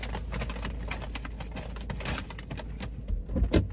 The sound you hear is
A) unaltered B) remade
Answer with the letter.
A